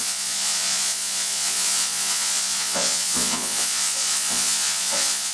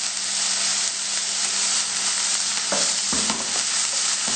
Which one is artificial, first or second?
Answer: first